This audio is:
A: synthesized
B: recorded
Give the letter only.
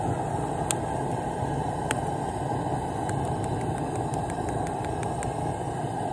B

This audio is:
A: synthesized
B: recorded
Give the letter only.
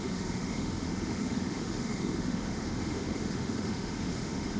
A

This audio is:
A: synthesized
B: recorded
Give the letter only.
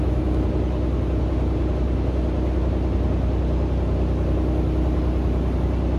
B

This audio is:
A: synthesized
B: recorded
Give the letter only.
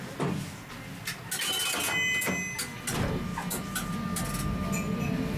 B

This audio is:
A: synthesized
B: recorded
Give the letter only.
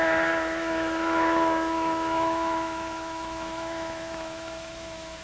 A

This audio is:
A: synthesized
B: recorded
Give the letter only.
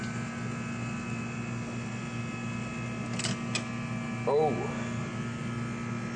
B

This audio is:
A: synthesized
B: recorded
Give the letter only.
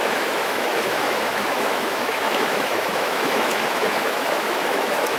A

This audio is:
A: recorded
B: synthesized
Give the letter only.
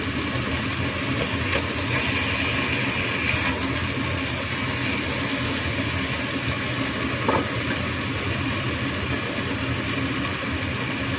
A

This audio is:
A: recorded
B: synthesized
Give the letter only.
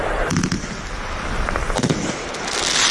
A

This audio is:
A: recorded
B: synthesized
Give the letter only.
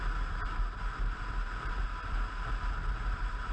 A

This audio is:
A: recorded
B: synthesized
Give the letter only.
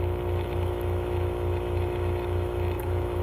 B